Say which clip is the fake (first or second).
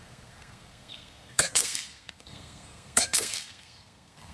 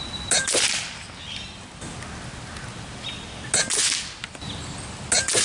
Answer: first